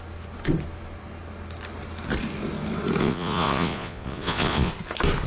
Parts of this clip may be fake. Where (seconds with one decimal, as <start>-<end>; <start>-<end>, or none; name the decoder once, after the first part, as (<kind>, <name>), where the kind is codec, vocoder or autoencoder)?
3.0-4.7 (vocoder, Vocos)